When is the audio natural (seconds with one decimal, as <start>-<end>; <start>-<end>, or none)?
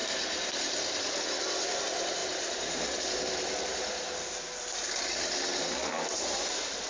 1.2-2.2; 3.0-5.9